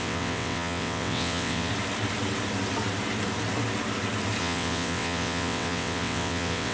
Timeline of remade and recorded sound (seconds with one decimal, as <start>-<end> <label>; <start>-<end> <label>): 0.0-1.7 remade; 1.7-4.4 recorded; 4.4-6.7 remade